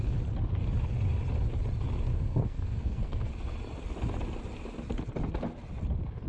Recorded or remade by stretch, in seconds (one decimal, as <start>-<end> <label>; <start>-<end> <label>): 0.0-2.1 recorded; 2.1-3.3 remade; 3.3-6.3 recorded